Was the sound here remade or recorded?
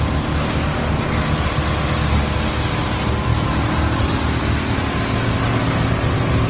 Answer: recorded